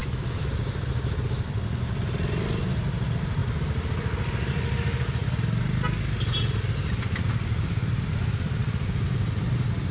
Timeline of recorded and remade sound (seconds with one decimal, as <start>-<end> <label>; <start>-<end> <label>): 0.0-0.5 remade; 0.5-9.9 recorded